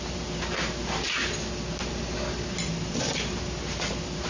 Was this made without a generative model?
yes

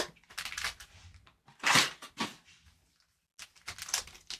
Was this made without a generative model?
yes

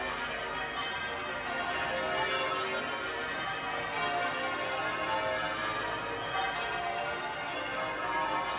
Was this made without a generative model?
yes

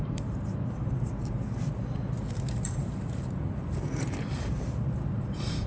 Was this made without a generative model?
no